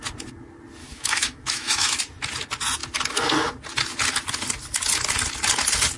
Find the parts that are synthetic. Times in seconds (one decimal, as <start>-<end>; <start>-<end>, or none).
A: 0.8-2.0